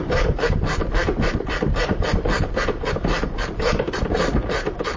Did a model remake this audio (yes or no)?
yes